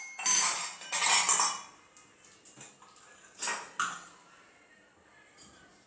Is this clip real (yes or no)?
yes